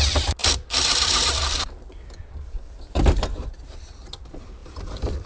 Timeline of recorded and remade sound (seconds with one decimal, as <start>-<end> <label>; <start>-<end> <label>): 0.0-0.4 recorded; 0.4-3.6 remade; 3.6-4.6 recorded; 4.6-5.3 remade